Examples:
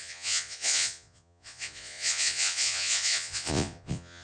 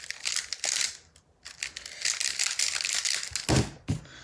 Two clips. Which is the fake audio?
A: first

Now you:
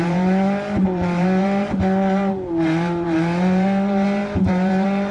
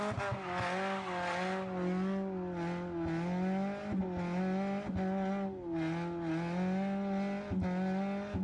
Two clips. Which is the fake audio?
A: first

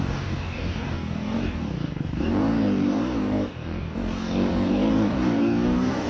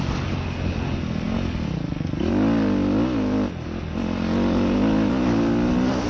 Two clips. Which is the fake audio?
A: first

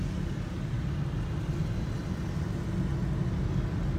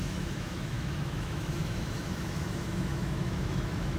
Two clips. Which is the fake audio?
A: second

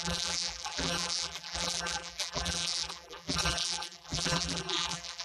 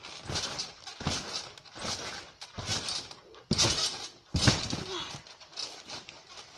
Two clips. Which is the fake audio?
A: first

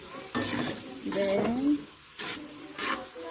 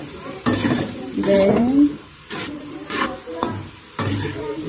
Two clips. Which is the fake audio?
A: second